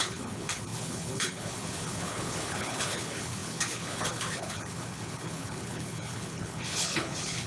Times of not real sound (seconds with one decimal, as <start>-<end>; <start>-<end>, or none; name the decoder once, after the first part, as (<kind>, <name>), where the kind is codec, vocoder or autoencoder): 0.0-7.5 (codec, HILCodec)